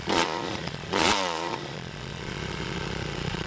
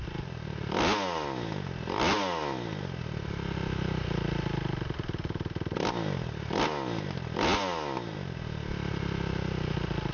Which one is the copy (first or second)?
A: first